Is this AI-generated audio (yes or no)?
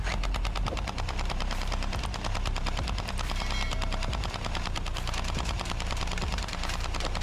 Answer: yes